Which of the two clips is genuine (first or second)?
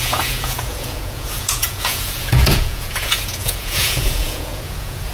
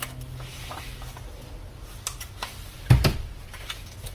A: second